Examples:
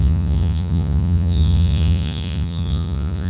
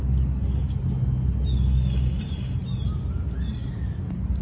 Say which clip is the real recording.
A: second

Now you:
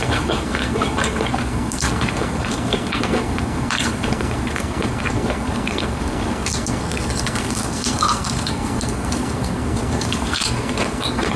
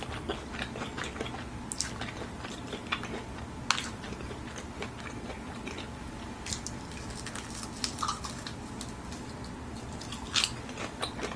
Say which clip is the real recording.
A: second